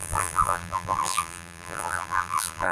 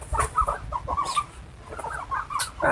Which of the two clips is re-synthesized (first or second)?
first